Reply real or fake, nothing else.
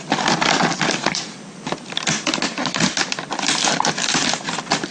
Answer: real